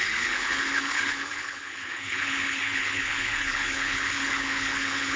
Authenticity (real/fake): fake